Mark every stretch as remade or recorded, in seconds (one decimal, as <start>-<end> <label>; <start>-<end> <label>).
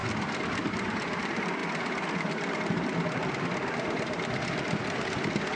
0.0-0.6 recorded; 0.6-5.6 remade